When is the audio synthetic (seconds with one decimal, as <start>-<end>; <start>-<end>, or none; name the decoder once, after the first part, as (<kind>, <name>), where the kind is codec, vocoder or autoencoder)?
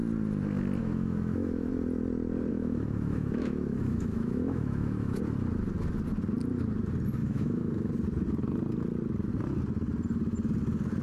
0.8-1.7 (autoencoder, DAC-VAE); 2.5-5.2; 7.2-7.9